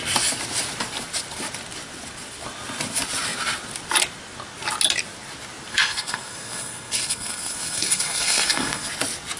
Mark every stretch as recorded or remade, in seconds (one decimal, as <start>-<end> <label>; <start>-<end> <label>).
0.0-5.7 recorded; 5.7-8.9 remade; 8.9-9.4 recorded